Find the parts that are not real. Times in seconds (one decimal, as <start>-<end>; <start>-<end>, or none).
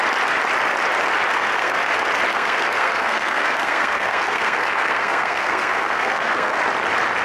1.3-1.8; 2.3-6.6